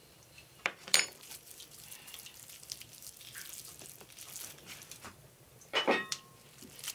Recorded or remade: remade